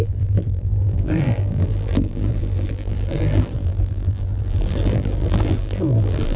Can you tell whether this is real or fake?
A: fake